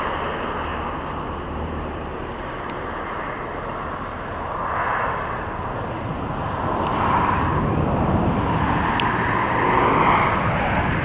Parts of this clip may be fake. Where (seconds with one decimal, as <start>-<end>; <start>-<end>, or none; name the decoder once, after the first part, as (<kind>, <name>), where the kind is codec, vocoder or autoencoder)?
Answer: 0.7-2.9 (vocoder, BigVGAN v2)